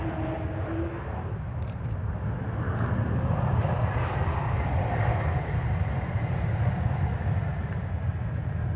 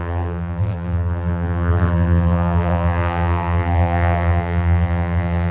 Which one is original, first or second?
first